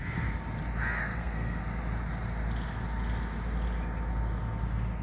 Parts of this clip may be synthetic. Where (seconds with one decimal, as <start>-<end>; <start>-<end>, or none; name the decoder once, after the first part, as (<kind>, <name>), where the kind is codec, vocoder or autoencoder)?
1.1-1.6 (codec, SNAC)